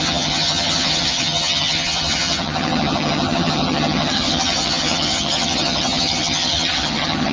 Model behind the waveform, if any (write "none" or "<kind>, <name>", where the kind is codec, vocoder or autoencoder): vocoder, HiFi-GAN